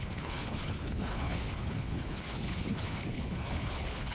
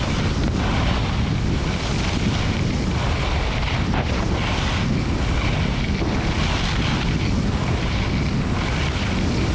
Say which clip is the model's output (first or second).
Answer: first